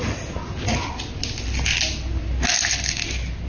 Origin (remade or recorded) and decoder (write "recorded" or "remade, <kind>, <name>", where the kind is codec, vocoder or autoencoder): recorded